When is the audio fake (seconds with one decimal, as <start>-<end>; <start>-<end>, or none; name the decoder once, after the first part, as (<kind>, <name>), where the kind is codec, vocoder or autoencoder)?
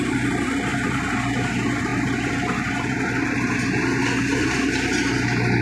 none